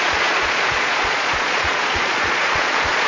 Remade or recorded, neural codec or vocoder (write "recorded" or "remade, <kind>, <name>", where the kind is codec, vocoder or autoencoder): remade, vocoder, Vocos